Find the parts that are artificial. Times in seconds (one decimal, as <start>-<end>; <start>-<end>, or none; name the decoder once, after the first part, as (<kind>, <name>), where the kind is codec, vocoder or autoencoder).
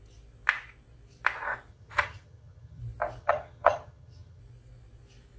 1.7-2.8 (vocoder, HiFi-GAN); 3.2-4.4